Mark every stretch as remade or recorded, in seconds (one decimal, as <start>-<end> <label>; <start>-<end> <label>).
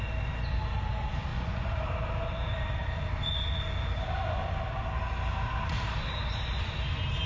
0.0-1.3 recorded; 1.3-1.8 remade; 1.8-7.3 recorded